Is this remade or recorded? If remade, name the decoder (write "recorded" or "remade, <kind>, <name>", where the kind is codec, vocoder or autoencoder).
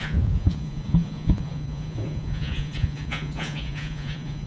remade, vocoder, Vocos